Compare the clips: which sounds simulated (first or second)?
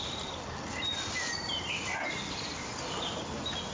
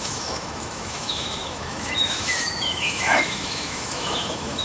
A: second